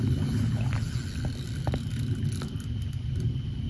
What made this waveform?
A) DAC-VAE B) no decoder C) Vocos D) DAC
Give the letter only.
B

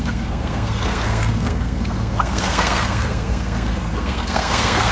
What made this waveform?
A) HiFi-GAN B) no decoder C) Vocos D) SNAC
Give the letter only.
D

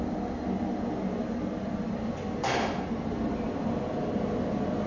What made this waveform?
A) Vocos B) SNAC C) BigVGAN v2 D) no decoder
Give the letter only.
D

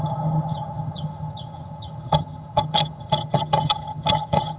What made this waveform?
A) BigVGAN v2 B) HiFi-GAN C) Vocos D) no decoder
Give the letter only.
B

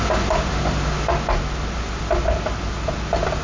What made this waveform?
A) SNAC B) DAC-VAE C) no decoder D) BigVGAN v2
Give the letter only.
C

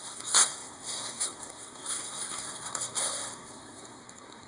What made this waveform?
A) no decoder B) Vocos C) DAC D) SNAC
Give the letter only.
D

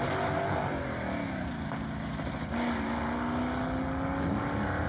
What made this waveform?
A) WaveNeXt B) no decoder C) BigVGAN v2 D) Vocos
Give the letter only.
B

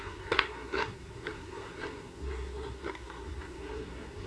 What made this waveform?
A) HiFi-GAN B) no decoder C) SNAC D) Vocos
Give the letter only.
C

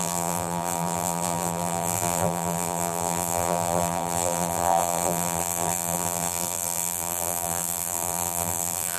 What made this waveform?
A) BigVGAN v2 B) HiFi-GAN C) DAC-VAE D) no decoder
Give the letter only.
A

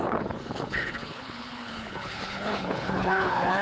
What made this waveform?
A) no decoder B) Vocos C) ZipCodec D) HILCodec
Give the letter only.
D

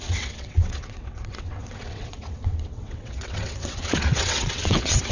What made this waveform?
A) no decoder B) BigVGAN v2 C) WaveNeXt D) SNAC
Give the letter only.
C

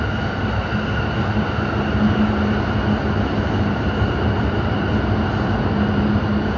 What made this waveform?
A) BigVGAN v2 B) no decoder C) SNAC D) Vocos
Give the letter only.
B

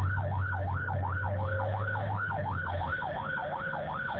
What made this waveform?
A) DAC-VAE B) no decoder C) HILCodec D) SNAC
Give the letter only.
C